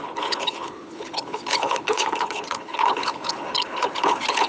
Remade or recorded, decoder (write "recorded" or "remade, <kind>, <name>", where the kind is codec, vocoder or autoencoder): remade, codec, HILCodec